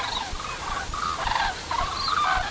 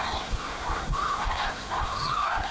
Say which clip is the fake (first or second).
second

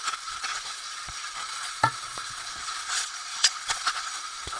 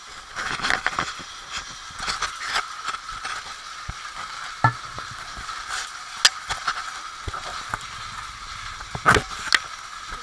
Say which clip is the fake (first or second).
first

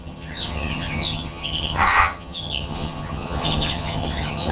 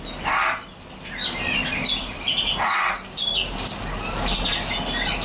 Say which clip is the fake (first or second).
first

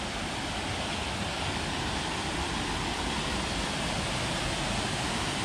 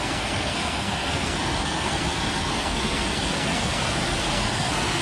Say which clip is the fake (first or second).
second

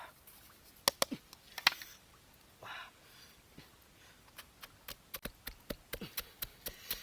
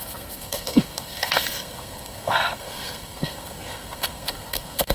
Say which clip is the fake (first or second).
second